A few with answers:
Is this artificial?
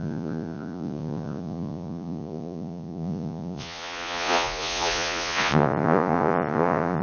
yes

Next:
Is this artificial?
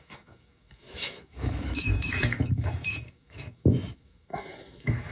yes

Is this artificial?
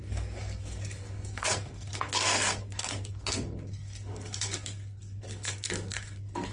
yes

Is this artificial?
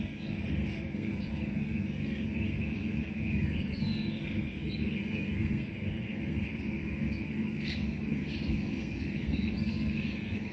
yes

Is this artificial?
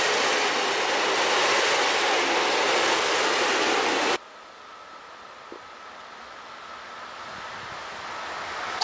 no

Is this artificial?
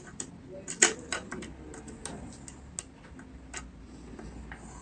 no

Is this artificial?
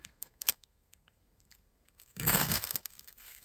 yes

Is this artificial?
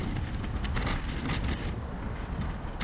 no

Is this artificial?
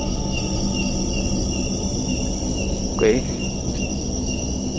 no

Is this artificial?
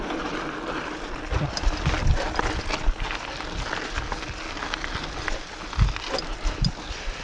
no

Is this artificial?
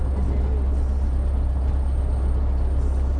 no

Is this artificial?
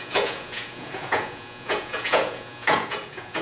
yes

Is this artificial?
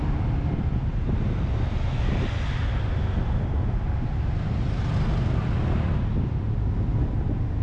no